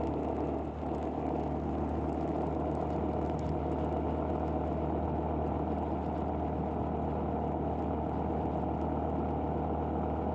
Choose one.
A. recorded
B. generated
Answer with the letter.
A